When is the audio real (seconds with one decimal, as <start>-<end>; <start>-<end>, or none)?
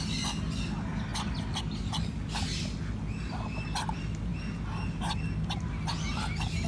0.0-6.7